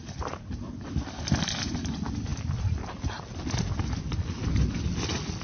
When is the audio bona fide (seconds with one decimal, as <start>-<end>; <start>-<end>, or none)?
0.0-5.4